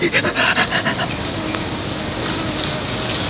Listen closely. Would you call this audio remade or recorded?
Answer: recorded